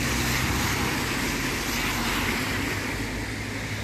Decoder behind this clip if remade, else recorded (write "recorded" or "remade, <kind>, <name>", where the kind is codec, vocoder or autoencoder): recorded